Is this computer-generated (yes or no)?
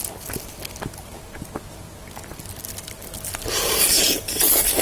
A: no